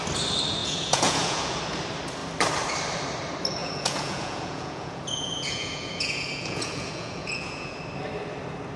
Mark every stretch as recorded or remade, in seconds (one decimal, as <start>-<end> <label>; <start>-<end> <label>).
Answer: 0.0-0.6 recorded; 0.6-1.6 remade; 1.6-3.6 recorded; 3.6-7.8 remade; 7.8-8.8 recorded